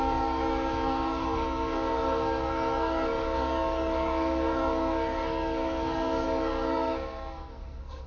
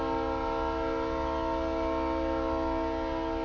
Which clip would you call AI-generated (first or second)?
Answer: first